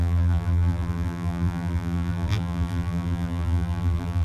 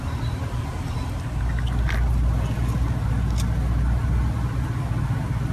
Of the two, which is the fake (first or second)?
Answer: first